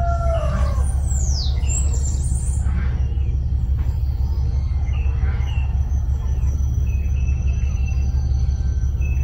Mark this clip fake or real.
real